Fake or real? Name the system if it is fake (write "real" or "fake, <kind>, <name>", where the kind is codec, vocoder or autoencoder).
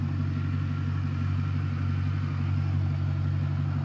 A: real